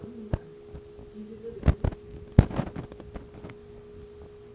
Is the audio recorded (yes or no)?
yes